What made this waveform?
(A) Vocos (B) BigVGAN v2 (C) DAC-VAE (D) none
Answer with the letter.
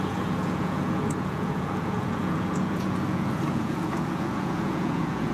A